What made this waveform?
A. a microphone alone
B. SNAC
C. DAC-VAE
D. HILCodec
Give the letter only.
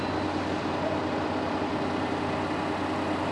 A